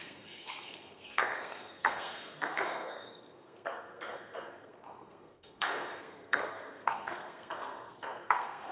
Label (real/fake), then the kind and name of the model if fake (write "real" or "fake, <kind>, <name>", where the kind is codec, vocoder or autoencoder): fake, codec, SNAC